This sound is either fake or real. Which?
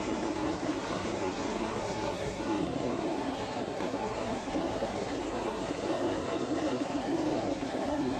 fake